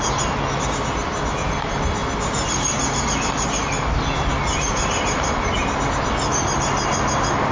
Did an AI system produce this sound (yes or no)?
no